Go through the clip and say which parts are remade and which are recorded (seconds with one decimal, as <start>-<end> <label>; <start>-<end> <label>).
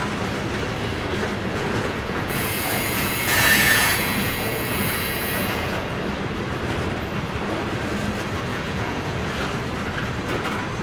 0.0-1.5 recorded; 1.5-5.9 remade; 5.9-8.5 recorded; 8.5-9.3 remade; 9.3-10.8 recorded